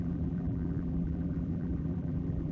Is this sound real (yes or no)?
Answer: no